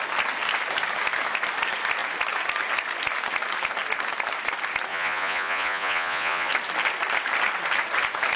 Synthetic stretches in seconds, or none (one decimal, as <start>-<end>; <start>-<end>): 4.9-6.5